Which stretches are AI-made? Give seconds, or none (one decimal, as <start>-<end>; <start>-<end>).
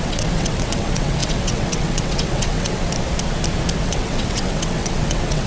0.0-2.8; 3.8-5.5